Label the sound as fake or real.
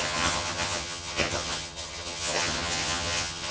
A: fake